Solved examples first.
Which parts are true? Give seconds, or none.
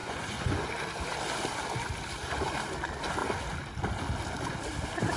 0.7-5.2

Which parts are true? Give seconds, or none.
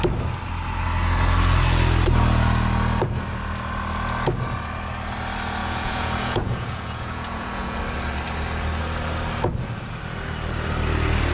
0.0-5.6; 7.8-11.3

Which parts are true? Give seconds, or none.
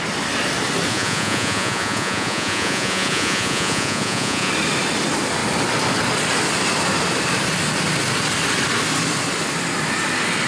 0.0-0.9; 4.5-10.5